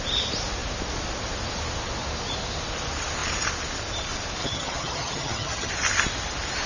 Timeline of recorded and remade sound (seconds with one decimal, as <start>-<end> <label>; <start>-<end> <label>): 0.0-4.4 recorded; 4.4-5.7 remade; 5.7-6.7 recorded